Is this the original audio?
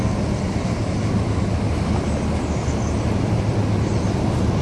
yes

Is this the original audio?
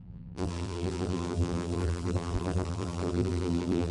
no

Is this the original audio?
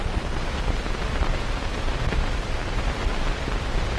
no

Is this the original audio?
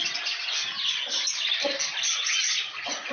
yes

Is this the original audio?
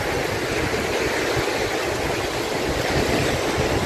yes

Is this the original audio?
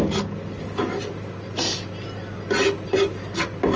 yes